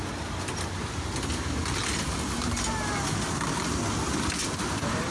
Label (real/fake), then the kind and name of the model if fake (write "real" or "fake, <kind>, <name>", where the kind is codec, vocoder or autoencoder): real